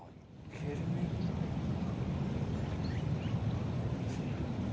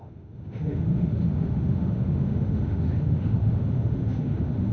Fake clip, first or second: second